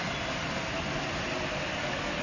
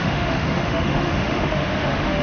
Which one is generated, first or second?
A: second